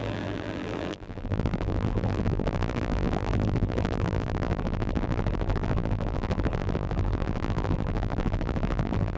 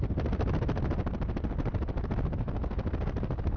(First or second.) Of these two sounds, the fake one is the first